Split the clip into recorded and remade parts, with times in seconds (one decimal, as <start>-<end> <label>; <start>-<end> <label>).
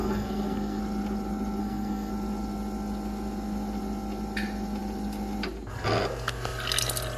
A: 0.0-0.8 remade; 0.8-1.6 recorded; 1.6-2.1 remade; 2.1-7.2 recorded